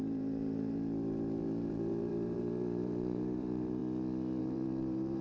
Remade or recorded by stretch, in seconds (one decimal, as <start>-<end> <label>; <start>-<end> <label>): 0.0-3.8 remade; 3.8-4.4 recorded; 4.4-5.2 remade